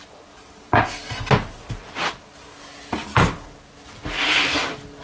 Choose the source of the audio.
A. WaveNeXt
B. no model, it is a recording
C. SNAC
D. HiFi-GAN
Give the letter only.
B